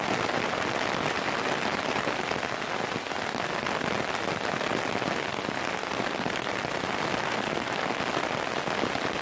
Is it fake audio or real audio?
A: real